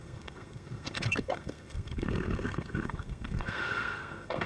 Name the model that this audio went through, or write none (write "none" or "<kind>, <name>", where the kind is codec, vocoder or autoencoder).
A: codec, SNAC